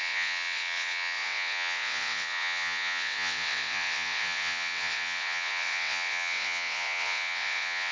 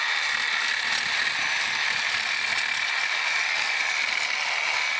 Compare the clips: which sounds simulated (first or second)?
first